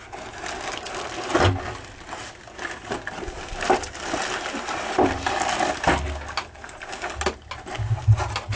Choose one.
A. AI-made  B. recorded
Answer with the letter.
B